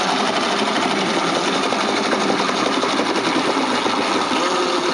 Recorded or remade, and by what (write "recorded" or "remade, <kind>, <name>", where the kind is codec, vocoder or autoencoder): recorded